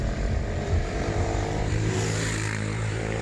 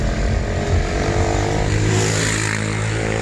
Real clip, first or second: second